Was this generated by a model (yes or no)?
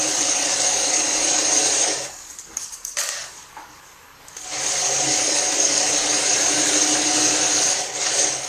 yes